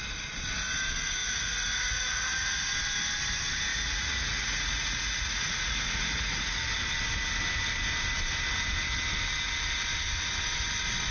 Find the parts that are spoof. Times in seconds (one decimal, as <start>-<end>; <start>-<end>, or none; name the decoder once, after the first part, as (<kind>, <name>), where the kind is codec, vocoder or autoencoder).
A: 1.2-2.7 (vocoder, Vocos); 3.7-6.7